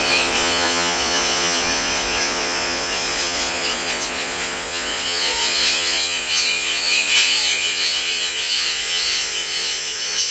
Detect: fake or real fake